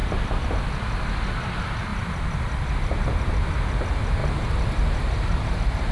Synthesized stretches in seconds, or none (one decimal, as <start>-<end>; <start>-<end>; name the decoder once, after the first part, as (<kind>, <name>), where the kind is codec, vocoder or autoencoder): 0.0-0.5 (vocoder, BigVGAN v2); 1.9-3.3

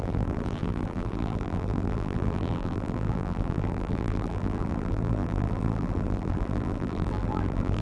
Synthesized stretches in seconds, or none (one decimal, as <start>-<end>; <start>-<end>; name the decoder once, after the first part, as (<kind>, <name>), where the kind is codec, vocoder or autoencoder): 0.0-7.8 (vocoder, BigVGAN v2)

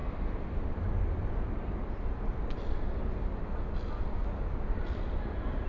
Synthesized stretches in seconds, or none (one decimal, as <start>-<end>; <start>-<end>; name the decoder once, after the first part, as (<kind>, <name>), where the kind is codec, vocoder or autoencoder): none

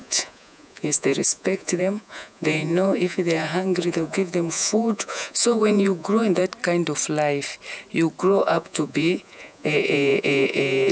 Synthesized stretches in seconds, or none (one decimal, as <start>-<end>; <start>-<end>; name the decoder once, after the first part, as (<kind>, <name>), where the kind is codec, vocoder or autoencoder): 0.0-6.4 (vocoder, Vocos); 8.2-10.9